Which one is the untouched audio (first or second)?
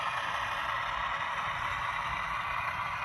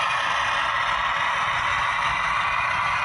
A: second